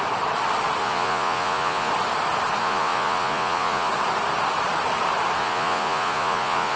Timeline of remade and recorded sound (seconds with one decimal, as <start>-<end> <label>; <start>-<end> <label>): 0.0-0.8 recorded; 0.8-1.9 remade; 1.9-2.6 recorded; 2.6-3.9 remade; 3.9-5.4 recorded; 5.4-6.8 remade